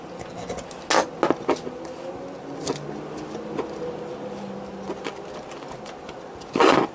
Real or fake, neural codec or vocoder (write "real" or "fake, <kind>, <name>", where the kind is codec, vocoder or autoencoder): real